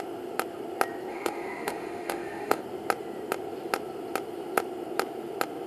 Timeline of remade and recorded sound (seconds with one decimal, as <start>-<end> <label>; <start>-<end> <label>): 0.0-1.1 recorded; 1.1-2.6 remade; 2.6-5.7 recorded